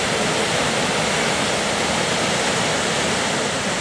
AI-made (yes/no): no